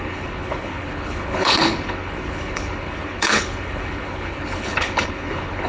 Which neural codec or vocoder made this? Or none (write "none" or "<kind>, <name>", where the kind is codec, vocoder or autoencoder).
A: codec, HILCodec